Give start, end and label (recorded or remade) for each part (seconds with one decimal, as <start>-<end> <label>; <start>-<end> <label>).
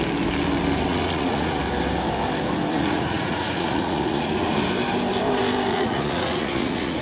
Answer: 0.0-0.9 recorded; 0.9-1.6 remade; 1.6-2.7 recorded; 2.7-4.6 remade; 4.6-5.7 recorded; 5.7-7.0 remade